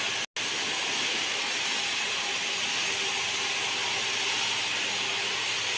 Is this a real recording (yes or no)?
yes